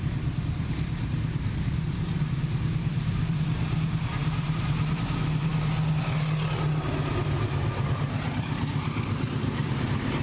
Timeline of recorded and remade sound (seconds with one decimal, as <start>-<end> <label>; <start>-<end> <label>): 0.0-5.5 remade; 5.5-7.1 recorded; 7.1-10.2 remade